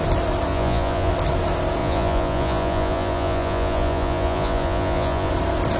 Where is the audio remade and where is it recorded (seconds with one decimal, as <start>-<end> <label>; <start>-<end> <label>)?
0.0-0.5 recorded; 0.5-1.1 remade; 1.1-1.8 recorded; 1.8-5.3 remade; 5.3-5.8 recorded